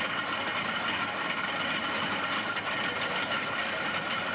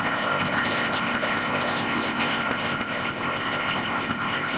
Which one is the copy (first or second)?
second